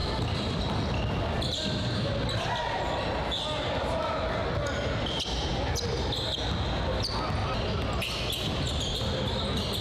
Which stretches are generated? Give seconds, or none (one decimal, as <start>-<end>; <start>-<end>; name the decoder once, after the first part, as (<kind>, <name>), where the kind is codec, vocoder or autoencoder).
none